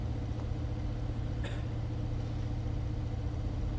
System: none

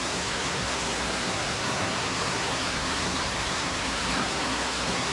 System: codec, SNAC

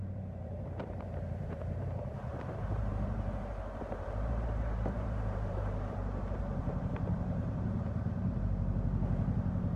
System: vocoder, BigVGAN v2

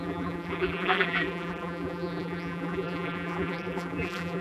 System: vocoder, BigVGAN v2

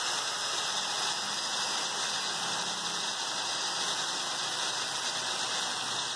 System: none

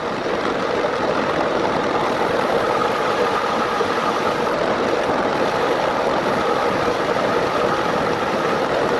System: vocoder, BigVGAN v2